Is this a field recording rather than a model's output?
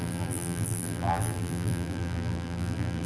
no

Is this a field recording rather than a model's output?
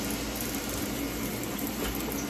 yes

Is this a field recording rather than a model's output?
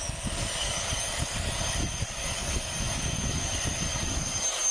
no